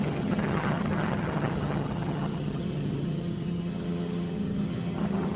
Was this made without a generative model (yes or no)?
no